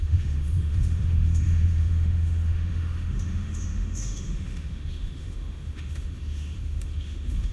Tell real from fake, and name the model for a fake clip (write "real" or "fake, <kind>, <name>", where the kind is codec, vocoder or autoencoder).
fake, autoencoder, DAC-VAE